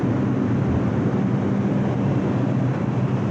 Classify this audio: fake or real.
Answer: real